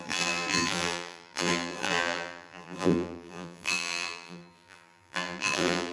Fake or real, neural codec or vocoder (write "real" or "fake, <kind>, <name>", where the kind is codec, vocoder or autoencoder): fake, vocoder, BigVGAN v2